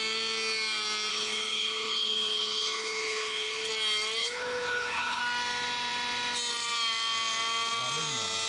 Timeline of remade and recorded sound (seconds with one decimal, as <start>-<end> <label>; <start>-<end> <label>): 0.0-1.1 recorded; 1.1-3.7 remade; 3.7-4.2 recorded; 4.2-5.2 remade; 5.2-8.5 recorded